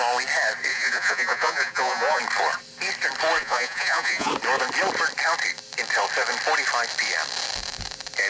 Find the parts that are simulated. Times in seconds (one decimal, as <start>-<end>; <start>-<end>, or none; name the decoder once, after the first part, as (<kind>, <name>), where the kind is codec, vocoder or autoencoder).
0.7-2.2 (vocoder, Vocos); 3.4-4.3